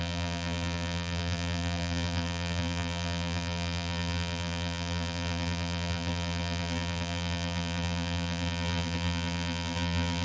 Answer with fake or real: fake